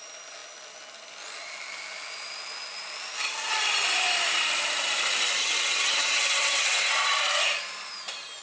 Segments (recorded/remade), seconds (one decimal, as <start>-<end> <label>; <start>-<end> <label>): 0.0-5.4 recorded; 5.4-6.9 remade; 6.9-8.4 recorded